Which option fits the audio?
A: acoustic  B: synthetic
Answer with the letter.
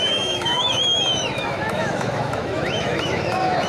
B